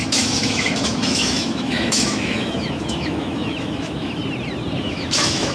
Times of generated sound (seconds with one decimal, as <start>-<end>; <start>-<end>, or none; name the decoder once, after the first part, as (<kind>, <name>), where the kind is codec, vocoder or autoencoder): 0.0-4.2 (autoencoder, DAC-VAE); 4.8-5.5